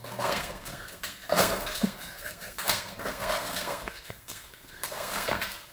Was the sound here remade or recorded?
remade